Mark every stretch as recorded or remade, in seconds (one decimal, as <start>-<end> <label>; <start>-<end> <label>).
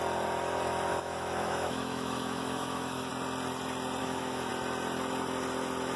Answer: 0.0-0.9 recorded; 0.9-3.1 remade; 3.1-4.0 recorded; 4.0-4.5 remade; 4.5-6.0 recorded